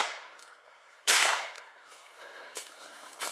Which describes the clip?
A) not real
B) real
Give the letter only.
A